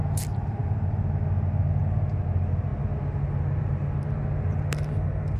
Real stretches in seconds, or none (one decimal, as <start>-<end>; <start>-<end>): 0.0-5.4